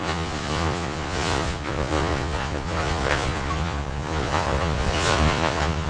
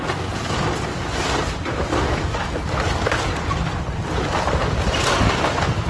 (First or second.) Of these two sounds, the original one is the second